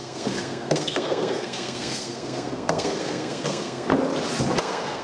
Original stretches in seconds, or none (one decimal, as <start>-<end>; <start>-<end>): 3.9-4.6

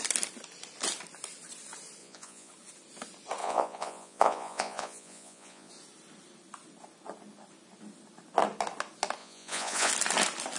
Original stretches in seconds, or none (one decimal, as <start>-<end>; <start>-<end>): 0.0-2.0; 2.5-3.4; 5.7-9.2; 9.9-10.6

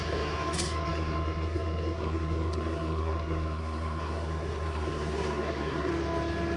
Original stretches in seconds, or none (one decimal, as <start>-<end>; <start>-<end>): 5.9-6.6